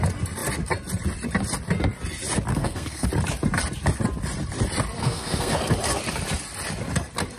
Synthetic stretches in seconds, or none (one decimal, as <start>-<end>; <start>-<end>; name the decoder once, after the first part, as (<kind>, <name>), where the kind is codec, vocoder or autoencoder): 2.5-3.1 (codec, SNAC); 5.0-5.6